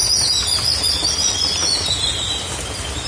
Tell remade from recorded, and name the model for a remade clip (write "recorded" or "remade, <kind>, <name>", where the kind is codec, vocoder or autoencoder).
recorded